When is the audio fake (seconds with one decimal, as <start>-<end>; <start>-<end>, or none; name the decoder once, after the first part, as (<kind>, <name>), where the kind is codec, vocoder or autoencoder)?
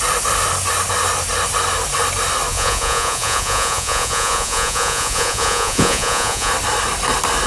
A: 2.5-6.5 (vocoder, Vocos)